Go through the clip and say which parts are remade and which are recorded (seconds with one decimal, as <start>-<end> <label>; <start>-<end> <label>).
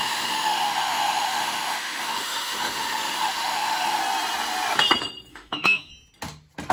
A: 0.0-4.0 remade; 4.0-5.3 recorded; 5.3-5.9 remade; 5.9-6.7 recorded